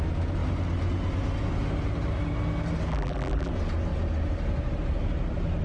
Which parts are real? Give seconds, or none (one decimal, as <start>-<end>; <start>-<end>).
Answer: 0.0-2.9; 3.5-5.6